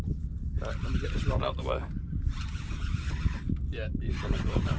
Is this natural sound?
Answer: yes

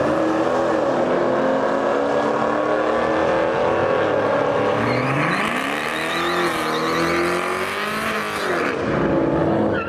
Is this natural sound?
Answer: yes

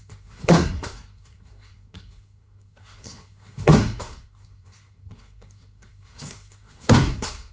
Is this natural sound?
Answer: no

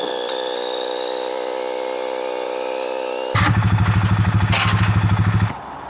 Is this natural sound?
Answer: yes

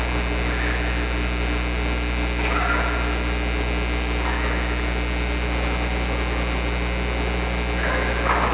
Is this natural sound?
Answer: yes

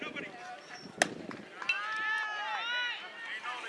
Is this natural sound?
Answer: yes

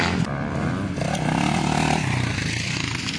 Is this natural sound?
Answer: yes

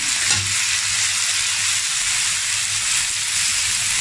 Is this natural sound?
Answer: yes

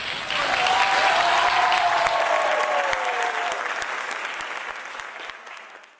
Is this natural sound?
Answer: yes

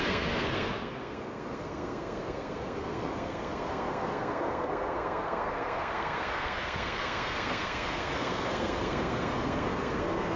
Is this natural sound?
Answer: no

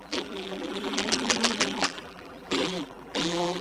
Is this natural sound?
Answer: no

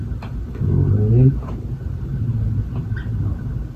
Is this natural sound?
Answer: yes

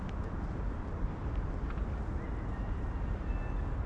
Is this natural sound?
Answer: yes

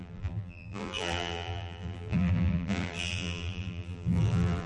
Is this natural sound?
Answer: no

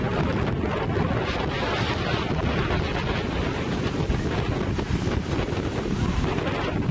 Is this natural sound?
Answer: yes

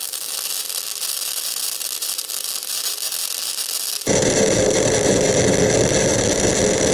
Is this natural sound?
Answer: yes